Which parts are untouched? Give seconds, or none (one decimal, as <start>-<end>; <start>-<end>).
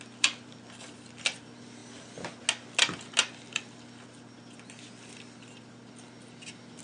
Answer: 0.0-6.8